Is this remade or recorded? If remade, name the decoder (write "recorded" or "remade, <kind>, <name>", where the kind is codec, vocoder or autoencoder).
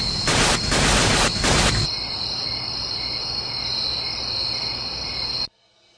recorded